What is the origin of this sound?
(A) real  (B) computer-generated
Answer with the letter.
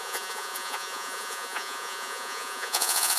B